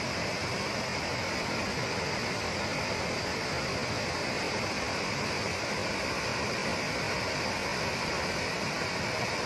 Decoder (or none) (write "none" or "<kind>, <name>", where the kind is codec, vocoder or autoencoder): vocoder, BigVGAN v2